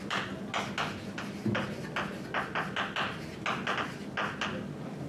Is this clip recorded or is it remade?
recorded